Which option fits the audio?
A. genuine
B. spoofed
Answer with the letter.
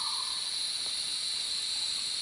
A